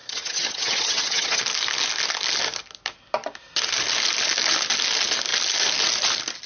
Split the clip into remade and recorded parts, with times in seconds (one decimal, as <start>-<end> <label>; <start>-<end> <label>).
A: 0.0-1.4 remade; 1.4-6.5 recorded